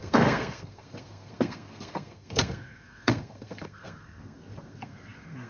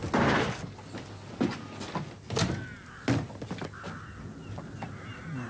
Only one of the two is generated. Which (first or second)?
first